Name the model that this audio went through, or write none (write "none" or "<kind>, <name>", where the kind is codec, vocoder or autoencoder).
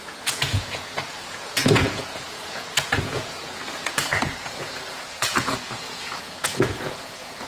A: vocoder, Vocos